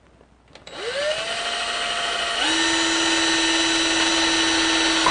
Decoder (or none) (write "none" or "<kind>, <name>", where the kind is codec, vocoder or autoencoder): none